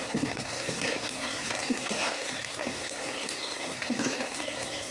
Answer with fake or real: fake